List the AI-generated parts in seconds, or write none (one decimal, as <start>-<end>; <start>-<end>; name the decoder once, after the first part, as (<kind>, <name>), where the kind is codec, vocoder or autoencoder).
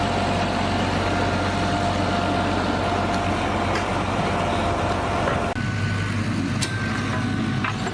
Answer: none